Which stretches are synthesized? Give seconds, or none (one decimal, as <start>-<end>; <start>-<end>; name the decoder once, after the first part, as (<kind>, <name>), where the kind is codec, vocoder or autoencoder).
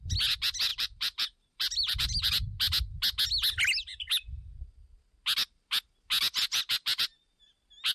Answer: 0.7-2.2 (vocoder, BigVGAN v2)